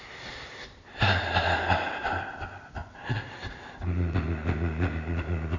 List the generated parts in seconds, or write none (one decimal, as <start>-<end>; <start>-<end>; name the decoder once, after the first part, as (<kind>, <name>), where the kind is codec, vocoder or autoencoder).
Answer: none

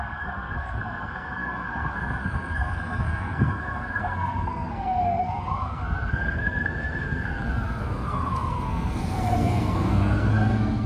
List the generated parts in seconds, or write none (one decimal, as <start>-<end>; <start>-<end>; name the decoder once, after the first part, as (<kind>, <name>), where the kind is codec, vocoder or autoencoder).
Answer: 0.0-10.9 (codec, SNAC)